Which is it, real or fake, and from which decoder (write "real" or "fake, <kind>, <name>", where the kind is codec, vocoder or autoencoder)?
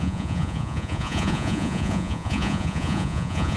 fake, vocoder, Vocos